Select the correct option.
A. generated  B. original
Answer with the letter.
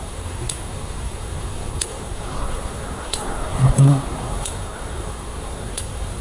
A